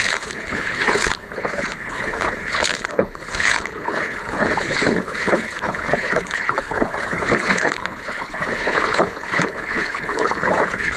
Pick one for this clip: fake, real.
fake